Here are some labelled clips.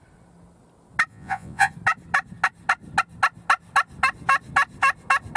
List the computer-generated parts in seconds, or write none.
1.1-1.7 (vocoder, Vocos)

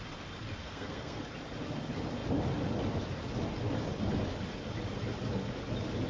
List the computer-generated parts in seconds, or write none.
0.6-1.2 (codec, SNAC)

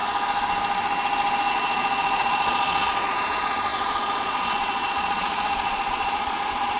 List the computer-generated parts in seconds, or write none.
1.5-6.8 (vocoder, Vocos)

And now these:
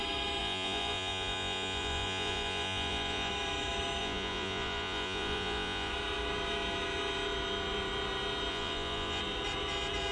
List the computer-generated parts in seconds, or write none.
0.4-3.3 (vocoder, Vocos); 4.0-5.9; 8.5-9.2